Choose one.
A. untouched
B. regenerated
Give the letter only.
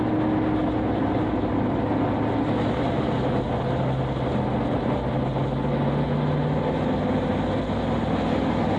A